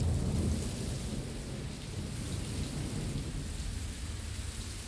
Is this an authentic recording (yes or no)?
yes